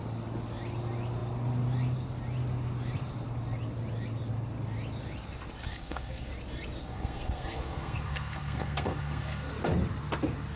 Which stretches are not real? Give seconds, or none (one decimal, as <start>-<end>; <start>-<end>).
5.7-6.3; 6.8-9.5